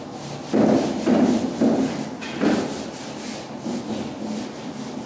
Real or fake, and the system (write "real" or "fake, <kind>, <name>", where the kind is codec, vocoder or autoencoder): real